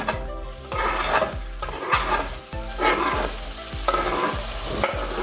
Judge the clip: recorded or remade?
recorded